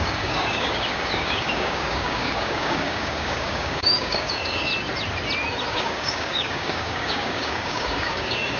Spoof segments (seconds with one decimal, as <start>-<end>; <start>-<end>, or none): 0.0-4.7; 5.7-8.6